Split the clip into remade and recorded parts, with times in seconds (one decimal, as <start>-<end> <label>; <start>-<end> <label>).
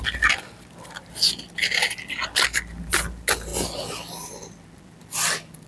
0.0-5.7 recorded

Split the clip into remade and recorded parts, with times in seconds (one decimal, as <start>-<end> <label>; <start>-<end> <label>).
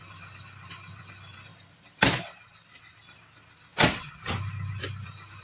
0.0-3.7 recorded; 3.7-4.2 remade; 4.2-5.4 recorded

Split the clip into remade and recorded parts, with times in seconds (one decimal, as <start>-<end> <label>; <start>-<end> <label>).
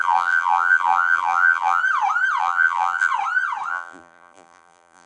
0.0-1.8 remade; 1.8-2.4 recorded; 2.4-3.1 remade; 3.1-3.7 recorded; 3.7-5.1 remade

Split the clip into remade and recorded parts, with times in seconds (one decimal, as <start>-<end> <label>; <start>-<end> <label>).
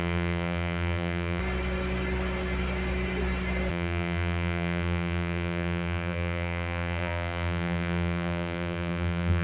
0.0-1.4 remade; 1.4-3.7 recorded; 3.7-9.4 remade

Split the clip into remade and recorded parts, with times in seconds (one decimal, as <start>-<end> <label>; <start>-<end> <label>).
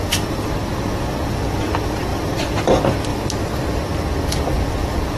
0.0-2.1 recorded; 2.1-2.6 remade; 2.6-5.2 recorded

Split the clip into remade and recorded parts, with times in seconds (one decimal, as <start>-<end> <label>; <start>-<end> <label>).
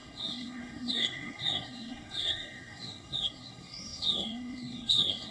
0.0-5.3 remade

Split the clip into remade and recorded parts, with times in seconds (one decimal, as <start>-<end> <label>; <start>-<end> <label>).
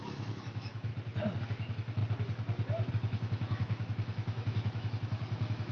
0.0-0.9 remade; 0.9-1.4 recorded; 1.4-2.0 remade; 2.0-2.9 recorded; 2.9-5.7 remade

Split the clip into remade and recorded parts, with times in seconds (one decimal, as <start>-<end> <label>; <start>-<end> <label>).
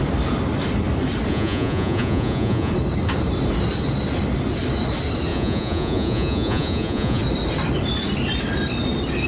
0.0-1.3 recorded; 1.3-2.7 remade; 2.7-5.3 recorded; 5.3-7.2 remade; 7.2-9.3 recorded